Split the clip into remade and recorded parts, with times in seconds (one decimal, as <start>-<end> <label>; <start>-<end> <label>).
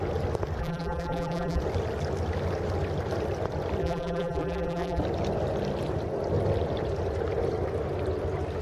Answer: 0.0-0.6 recorded; 0.6-1.6 remade; 1.6-3.8 recorded; 3.8-5.0 remade; 5.0-8.6 recorded